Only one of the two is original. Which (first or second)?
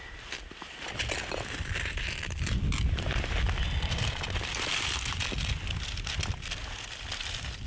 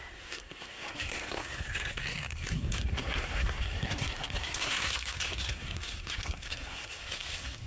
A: first